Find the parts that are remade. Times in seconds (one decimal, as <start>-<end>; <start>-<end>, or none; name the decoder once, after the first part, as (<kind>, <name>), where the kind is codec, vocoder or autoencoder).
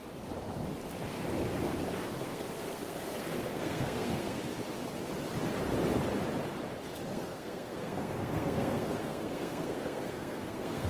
2.2-4.4 (codec, SNAC); 7.1-10.9